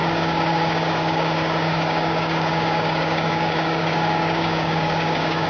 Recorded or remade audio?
remade